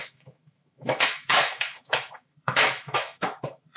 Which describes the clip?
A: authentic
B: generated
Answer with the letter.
B